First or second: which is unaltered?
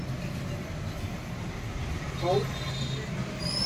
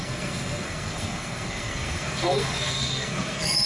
first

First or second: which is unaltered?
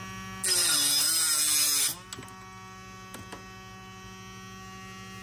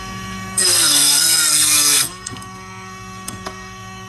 first